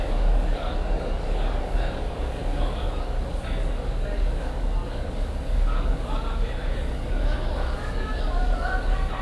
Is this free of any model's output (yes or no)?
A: no